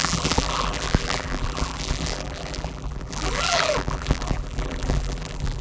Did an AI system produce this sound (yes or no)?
yes